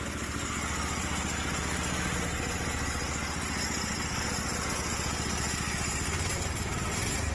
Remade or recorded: recorded